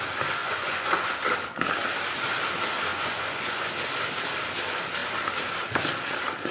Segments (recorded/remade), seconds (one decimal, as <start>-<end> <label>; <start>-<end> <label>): 0.0-0.4 recorded; 0.4-1.1 remade; 1.1-2.9 recorded; 2.9-3.7 remade; 3.7-6.5 recorded